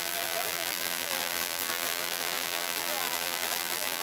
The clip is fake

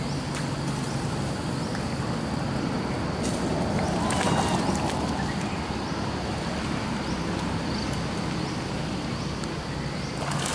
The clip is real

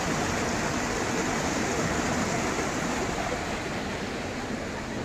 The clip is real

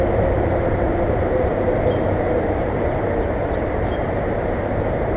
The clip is fake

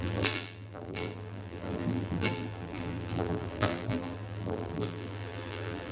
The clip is fake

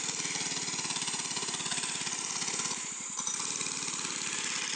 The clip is real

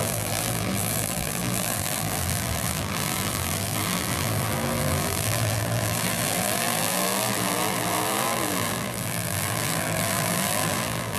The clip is fake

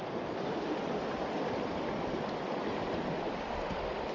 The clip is real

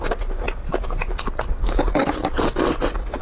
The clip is real